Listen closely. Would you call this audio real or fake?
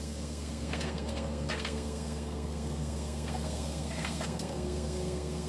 fake